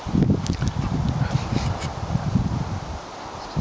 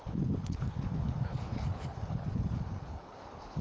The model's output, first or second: second